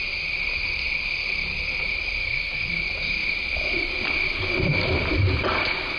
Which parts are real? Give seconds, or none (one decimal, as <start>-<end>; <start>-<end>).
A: 0.0-2.2; 2.7-6.0